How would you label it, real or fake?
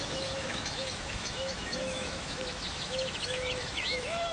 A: fake